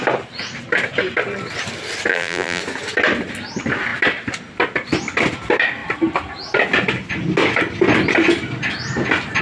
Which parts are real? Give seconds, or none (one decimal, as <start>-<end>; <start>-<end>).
0.0-2.1; 2.6-9.4

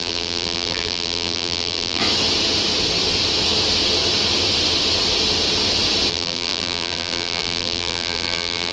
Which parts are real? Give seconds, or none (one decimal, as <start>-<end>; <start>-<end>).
2.0-6.1

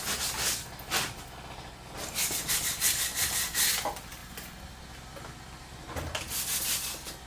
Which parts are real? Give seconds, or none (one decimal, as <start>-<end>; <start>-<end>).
0.0-7.3

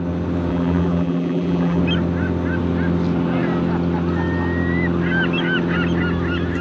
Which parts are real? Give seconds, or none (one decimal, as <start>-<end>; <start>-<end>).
0.0-0.5; 1.8-6.6

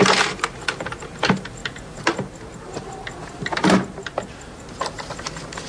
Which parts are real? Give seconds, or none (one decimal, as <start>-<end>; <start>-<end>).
0.0-5.7

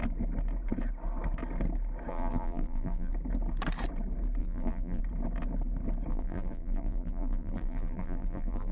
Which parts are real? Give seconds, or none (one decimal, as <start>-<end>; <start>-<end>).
0.0-2.1; 3.1-4.4; 5.0-6.1

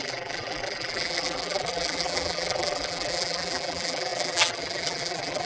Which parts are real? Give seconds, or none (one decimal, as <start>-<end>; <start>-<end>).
none

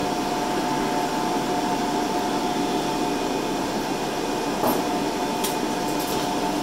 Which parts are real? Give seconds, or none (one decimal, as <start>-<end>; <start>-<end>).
0.0-6.6